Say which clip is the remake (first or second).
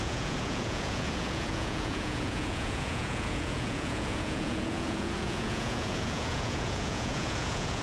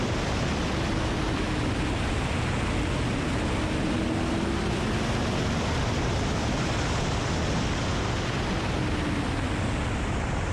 first